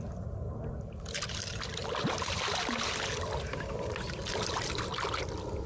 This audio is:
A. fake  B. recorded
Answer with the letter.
B